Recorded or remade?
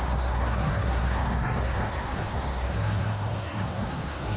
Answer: remade